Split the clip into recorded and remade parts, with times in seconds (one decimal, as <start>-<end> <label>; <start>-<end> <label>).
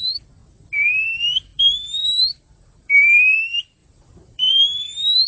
0.0-0.4 remade; 0.4-0.9 recorded; 0.9-1.5 remade; 1.5-2.0 recorded; 2.0-5.3 remade